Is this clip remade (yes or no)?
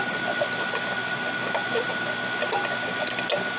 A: no